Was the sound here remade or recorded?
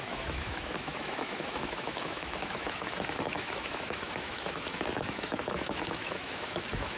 remade